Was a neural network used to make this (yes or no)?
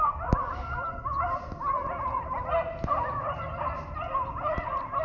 no